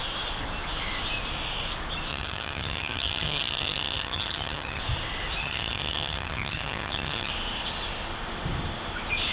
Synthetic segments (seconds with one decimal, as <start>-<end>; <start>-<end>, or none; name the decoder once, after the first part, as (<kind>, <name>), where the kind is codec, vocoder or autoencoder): 2.1-4.8 (vocoder, HiFi-GAN); 5.4-7.3